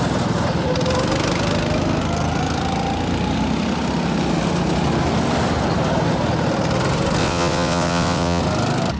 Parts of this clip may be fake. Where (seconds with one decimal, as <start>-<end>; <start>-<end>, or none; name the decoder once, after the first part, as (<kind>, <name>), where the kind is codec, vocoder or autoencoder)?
7.2-8.4 (vocoder, WaveNeXt)